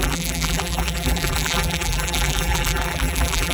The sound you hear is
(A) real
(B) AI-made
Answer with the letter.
B